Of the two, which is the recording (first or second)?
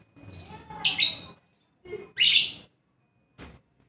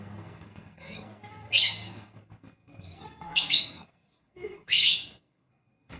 first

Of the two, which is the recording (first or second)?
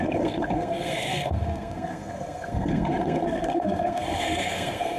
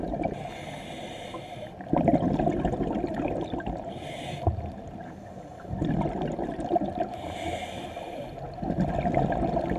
second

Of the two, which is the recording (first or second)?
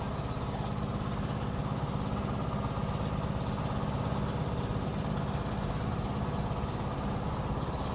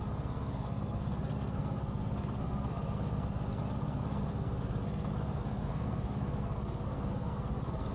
first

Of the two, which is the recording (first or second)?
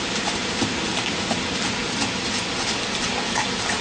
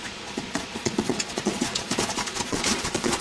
first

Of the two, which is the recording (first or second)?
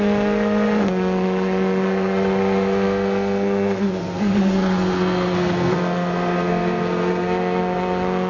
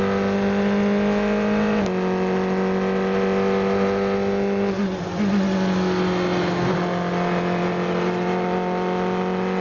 second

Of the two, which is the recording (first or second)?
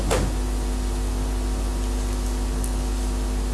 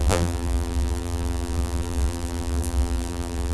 first